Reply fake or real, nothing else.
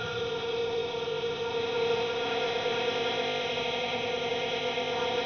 fake